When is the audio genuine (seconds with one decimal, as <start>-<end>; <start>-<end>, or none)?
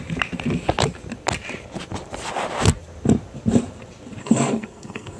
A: 0.0-4.2